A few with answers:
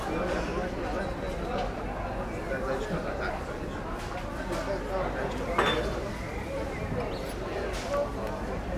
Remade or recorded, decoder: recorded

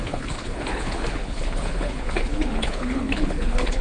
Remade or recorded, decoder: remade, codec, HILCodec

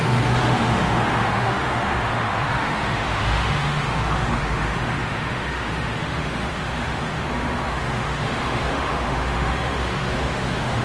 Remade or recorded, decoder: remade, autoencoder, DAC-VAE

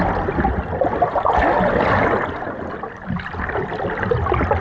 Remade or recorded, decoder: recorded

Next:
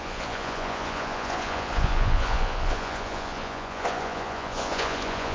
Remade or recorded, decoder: remade, vocoder, Vocos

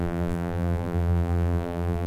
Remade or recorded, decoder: remade, vocoder, BigVGAN v2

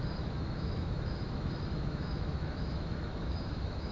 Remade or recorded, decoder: remade, autoencoder, DAC-VAE